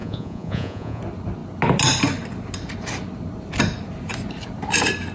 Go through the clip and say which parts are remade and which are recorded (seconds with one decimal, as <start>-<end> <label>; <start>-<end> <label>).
0.0-1.0 remade; 1.0-5.1 recorded